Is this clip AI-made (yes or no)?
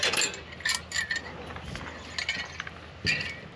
no